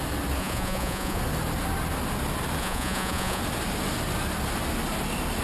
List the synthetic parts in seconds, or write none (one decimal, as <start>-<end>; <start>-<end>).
0.4-1.2; 2.6-3.4